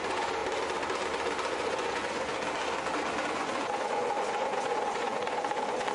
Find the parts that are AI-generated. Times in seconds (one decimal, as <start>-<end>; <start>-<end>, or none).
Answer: 0.0-0.4; 1.5-2.3; 3.3-5.9